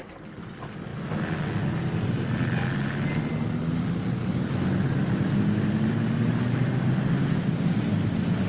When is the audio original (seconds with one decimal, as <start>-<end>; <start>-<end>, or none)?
0.0-8.5